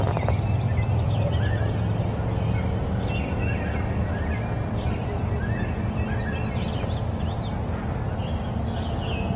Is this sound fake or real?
real